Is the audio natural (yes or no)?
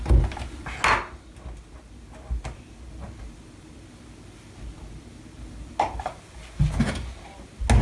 yes